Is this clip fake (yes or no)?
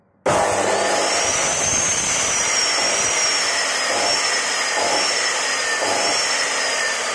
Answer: no